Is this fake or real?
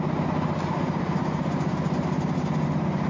real